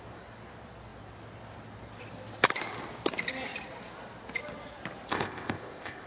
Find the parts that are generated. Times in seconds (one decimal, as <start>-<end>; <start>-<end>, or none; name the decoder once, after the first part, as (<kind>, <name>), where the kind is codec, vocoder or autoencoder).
5.1-6.1 (codec, ZipCodec)